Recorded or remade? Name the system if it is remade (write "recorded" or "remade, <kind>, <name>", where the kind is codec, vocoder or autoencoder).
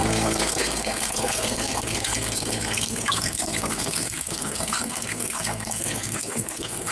remade, codec, SNAC